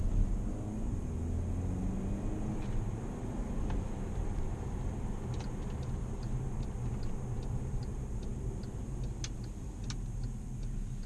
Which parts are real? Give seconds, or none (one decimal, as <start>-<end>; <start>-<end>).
0.0-11.1